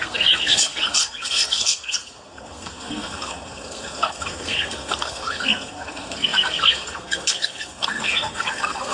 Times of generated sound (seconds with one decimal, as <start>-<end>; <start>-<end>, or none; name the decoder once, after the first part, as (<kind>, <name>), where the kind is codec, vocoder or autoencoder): 0.0-8.9 (codec, SNAC)